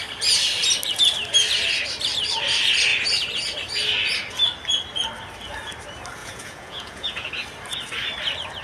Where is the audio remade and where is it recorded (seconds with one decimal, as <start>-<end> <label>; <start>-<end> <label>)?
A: 0.0-6.2 recorded; 6.2-7.3 remade; 7.3-8.6 recorded